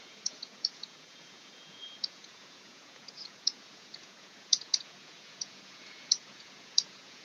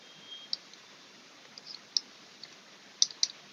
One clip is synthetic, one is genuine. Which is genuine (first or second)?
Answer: second